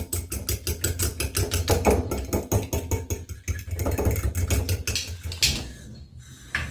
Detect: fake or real real